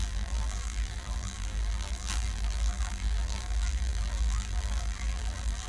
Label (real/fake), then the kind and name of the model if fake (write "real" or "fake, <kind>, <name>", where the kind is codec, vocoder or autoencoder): fake, vocoder, BigVGAN v2